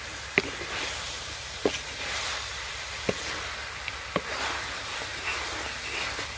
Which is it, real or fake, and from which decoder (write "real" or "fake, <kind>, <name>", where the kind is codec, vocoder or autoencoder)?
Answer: fake, vocoder, BigVGAN v2